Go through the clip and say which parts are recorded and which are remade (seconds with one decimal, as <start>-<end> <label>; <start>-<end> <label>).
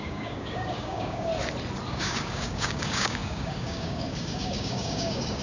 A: 0.0-1.3 remade; 1.3-1.9 recorded; 1.9-5.4 remade